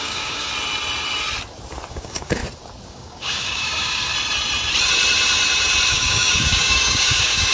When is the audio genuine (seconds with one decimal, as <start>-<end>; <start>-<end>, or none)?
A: 0.5-1.9; 2.4-2.9; 4.1-5.9